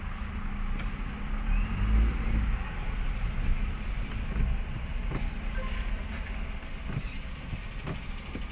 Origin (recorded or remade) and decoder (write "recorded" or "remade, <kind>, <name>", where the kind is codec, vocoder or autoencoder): recorded